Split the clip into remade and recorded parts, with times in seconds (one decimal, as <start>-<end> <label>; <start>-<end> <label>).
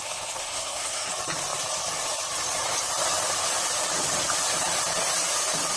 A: 0.0-0.4 recorded; 0.4-1.1 remade; 1.1-5.8 recorded